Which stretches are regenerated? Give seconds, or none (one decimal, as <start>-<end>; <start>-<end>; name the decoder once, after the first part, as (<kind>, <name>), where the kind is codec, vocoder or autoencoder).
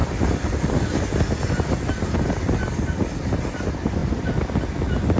none